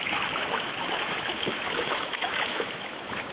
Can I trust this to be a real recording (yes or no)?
no